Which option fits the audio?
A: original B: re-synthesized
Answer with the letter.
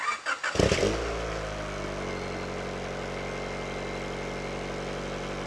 A